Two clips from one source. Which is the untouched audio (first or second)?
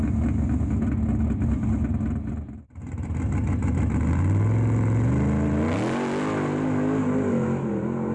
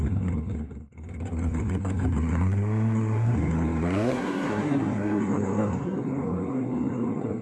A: first